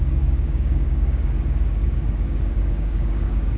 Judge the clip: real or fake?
fake